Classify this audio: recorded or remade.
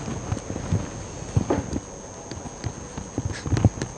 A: recorded